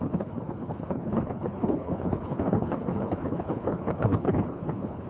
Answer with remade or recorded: remade